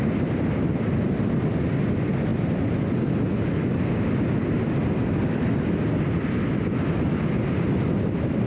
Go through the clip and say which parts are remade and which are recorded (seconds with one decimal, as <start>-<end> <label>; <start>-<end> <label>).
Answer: 0.0-8.5 recorded